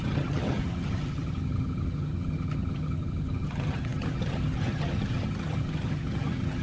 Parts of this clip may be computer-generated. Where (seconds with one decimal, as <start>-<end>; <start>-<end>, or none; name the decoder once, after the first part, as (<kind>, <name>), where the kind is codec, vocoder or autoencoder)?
0.0-6.6 (vocoder, HiFi-GAN)